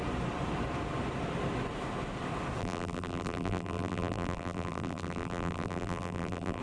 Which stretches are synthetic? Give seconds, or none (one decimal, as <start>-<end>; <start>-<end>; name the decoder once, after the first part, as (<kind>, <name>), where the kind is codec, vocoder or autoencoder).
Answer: 2.6-6.6 (vocoder, BigVGAN v2)